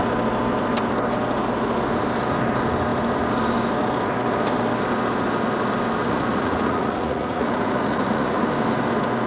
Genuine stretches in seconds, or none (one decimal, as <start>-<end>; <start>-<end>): 0.0-6.0; 8.5-9.3